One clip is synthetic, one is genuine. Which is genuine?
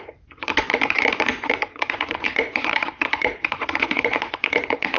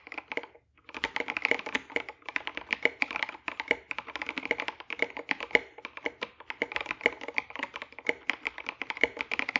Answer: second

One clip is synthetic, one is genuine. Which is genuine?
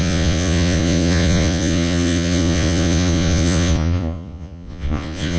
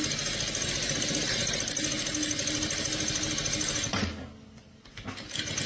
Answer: second